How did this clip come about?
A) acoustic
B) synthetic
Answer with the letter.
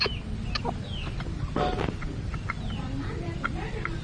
A